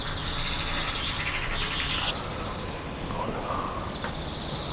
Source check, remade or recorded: recorded